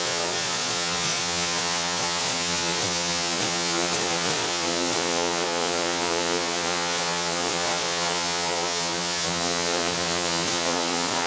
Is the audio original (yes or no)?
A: no